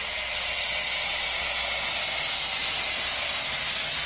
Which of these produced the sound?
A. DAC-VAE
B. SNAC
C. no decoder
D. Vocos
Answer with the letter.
C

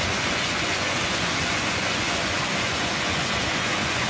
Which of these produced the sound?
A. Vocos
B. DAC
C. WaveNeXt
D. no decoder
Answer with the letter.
A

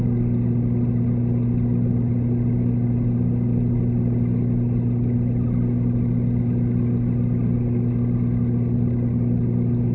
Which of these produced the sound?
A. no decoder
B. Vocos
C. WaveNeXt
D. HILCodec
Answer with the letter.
A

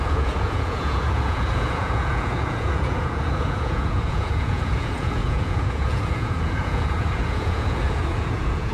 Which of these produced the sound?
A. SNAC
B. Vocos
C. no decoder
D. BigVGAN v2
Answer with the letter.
B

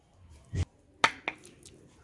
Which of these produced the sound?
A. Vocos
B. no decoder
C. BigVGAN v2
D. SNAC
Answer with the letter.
B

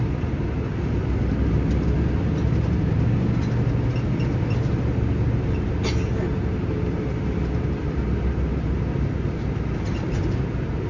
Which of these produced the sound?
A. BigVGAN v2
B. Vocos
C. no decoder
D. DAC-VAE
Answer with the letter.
C